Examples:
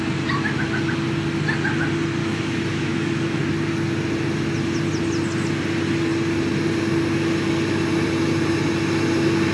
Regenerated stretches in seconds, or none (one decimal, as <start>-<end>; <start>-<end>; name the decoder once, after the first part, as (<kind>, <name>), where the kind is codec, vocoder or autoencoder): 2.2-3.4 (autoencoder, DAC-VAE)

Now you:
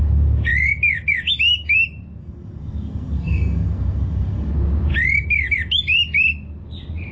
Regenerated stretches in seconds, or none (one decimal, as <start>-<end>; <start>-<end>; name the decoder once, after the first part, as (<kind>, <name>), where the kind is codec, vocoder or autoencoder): 2.2-4.5 (codec, SNAC)

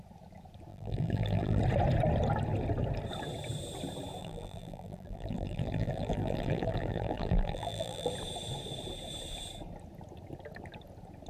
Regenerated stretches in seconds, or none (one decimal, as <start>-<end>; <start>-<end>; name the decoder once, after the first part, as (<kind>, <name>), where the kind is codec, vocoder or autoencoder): 0.7-1.6 (vocoder, BigVGAN v2); 4.2-8.1

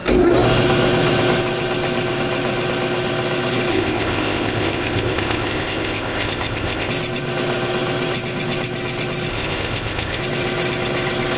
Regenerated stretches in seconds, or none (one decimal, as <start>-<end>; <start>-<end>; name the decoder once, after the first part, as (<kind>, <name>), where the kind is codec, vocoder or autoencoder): 3.7-6.9 (codec, ZipCodec); 9.3-10.2

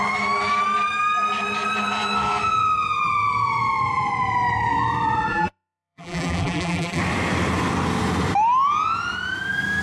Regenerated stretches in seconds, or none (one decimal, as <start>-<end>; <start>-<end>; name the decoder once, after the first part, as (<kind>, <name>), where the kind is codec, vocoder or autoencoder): 5.3-7.0 (vocoder, BigVGAN v2)

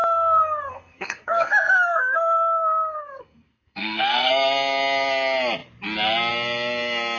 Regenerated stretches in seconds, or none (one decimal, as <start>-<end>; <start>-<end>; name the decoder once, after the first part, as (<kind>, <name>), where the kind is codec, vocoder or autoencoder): 0.0-4.3 (codec, SNAC)

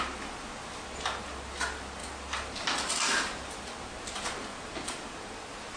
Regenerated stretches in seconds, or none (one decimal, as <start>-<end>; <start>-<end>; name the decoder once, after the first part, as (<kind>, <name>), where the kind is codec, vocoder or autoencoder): none